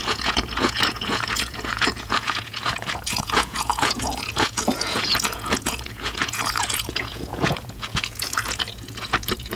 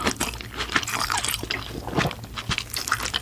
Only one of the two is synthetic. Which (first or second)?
first